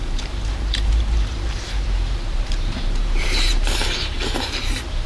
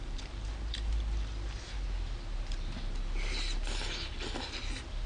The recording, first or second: second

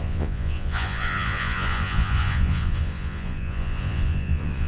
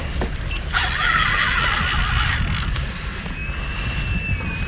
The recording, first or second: second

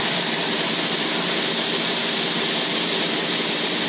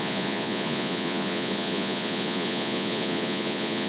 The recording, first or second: first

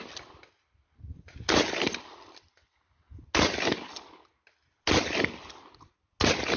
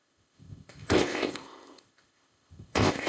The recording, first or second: first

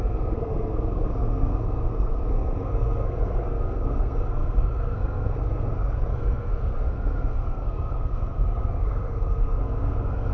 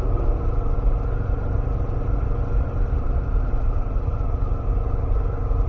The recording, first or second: second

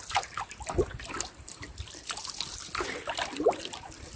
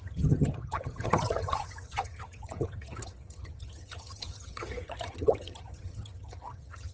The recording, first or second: first